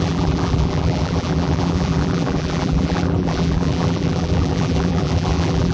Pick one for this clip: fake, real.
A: fake